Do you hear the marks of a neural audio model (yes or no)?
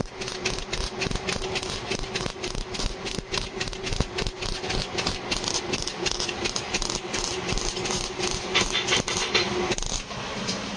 no